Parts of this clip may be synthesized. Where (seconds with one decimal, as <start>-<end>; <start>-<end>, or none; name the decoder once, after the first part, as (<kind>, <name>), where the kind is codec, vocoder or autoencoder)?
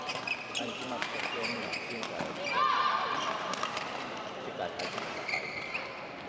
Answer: 2.7-5.5 (vocoder, BigVGAN v2)